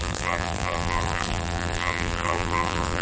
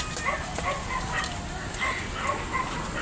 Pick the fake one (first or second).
first